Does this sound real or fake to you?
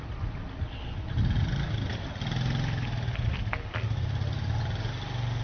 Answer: real